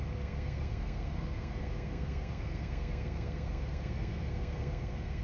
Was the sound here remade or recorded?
remade